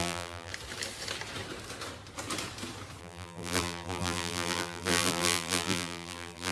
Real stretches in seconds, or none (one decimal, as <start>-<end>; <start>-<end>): 0.5-3.0